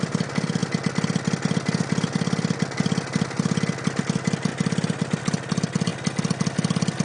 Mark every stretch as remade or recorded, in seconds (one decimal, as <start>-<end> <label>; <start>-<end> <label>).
0.0-7.0 recorded

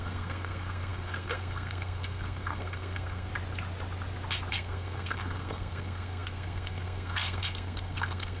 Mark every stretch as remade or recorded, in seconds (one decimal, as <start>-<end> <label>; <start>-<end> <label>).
0.0-3.3 remade; 3.3-4.5 recorded; 4.5-8.4 remade

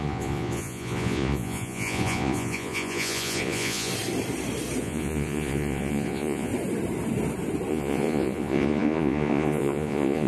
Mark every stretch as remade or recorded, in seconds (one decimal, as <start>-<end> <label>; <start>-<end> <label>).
0.0-3.9 remade; 3.9-4.8 recorded; 4.8-6.5 remade; 6.5-7.7 recorded; 7.7-10.3 remade

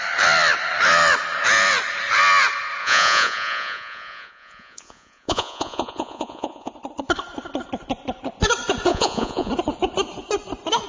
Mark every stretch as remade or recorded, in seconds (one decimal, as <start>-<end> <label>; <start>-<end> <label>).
0.0-2.8 recorded; 2.8-6.7 remade; 6.7-8.9 recorded; 8.9-9.5 remade; 9.5-10.9 recorded

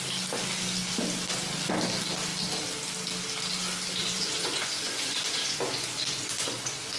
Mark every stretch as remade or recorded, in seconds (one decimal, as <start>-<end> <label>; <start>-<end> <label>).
0.0-4.0 recorded; 4.0-7.0 remade

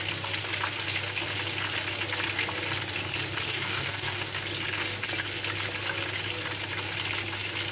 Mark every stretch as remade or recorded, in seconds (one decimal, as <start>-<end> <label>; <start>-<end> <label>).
0.0-3.5 recorded; 3.5-4.4 remade; 4.4-7.7 recorded

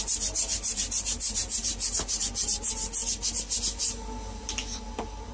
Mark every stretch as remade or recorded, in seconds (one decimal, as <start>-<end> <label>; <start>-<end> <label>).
0.0-3.0 remade; 3.0-3.8 recorded; 3.8-5.3 remade